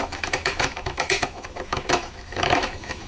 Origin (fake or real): fake